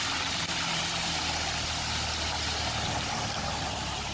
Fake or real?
real